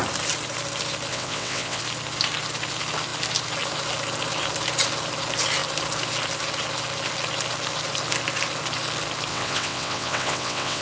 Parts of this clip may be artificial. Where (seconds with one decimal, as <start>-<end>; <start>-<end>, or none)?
1.1-1.8; 9.3-10.8